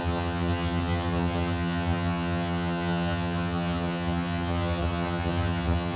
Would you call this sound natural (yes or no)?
no